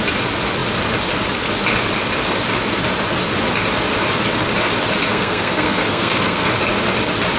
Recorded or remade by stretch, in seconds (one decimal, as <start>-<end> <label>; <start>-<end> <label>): 0.0-5.1 recorded; 5.1-6.5 remade; 6.5-7.4 recorded